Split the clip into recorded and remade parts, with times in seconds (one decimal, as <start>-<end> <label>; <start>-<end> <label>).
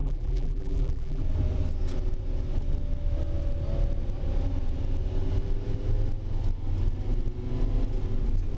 0.0-1.2 remade; 1.2-8.6 recorded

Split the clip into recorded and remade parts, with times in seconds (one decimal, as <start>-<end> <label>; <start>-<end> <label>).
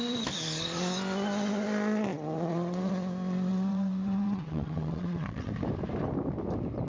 0.0-2.1 recorded; 2.1-2.9 remade; 2.9-3.5 recorded; 3.5-5.5 remade; 5.5-6.9 recorded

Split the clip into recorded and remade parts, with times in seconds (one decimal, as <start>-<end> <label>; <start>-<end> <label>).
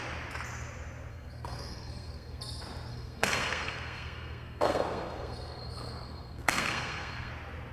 0.0-1.1 recorded; 1.1-2.4 remade; 2.4-2.9 recorded; 2.9-7.3 remade; 7.3-7.7 recorded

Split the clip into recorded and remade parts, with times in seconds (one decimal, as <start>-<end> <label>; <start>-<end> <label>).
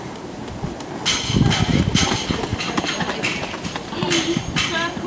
0.0-2.5 recorded; 2.5-5.1 remade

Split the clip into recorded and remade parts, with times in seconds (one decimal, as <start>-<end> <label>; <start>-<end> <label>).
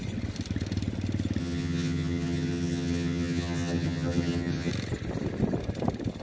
0.0-1.4 recorded; 1.4-4.7 remade; 4.7-6.2 recorded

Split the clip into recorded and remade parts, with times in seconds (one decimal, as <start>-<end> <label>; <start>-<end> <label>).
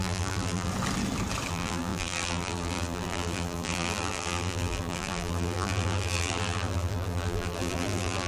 0.0-0.7 remade; 0.7-1.5 recorded; 1.5-8.3 remade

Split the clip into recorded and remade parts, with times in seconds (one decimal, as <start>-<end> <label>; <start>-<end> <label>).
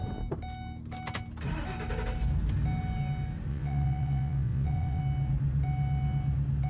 0.0-3.5 recorded; 3.5-5.0 remade; 5.0-6.7 recorded